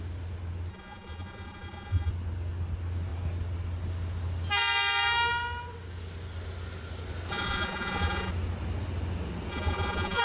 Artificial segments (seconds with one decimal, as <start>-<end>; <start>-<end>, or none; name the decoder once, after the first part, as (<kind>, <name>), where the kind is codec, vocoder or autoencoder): 0.7-2.1 (vocoder, Vocos); 7.3-8.3; 9.5-10.2